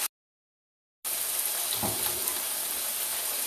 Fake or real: real